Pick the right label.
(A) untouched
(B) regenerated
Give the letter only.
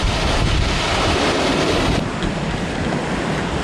A